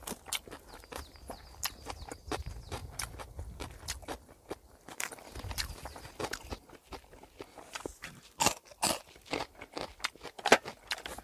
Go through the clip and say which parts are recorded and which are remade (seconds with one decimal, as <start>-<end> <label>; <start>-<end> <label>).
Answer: 0.0-11.2 recorded

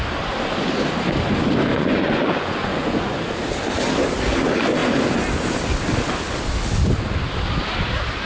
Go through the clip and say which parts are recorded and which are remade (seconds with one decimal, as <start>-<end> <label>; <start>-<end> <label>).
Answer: 0.0-1.7 recorded; 1.7-3.2 remade; 3.2-8.3 recorded

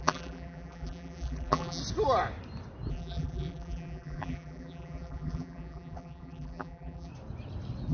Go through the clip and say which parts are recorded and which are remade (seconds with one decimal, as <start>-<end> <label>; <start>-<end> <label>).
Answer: 0.0-1.8 remade; 1.8-2.9 recorded; 2.9-7.1 remade; 7.1-7.9 recorded